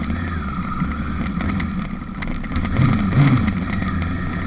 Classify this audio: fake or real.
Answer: real